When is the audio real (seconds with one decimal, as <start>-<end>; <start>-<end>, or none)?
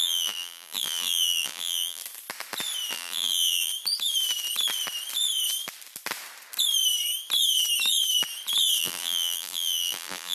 2.0-2.9; 3.7-8.8